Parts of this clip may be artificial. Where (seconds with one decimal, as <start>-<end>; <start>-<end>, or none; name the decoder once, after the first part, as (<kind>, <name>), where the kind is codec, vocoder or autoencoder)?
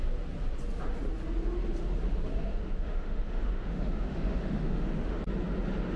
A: 2.5-5.2 (autoencoder, DAC-VAE)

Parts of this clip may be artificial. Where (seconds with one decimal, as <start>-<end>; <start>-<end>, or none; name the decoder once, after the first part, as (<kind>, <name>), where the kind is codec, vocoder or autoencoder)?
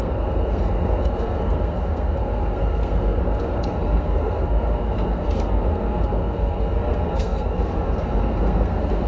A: 0.0-9.1 (codec, SNAC)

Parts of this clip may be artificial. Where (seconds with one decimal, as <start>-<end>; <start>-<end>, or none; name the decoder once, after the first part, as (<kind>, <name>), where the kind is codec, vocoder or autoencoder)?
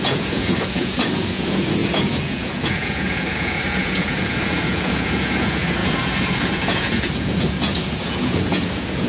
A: 0.0-9.1 (vocoder, Vocos)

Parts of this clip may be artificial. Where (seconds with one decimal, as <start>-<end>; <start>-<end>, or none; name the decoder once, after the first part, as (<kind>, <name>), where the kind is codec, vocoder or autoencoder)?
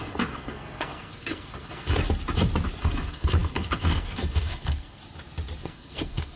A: 0.0-2.0 (codec, SNAC); 2.8-5.0; 5.6-6.4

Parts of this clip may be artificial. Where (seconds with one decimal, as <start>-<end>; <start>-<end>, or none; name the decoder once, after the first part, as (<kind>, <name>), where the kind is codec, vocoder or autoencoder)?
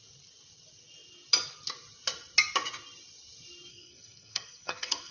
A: 3.7-5.1 (codec, SNAC)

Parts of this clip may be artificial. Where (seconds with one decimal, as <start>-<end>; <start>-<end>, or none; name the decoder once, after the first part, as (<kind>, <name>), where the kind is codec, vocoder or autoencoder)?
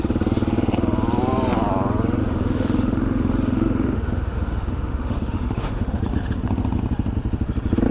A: 2.2-6.0 (autoencoder, DAC-VAE)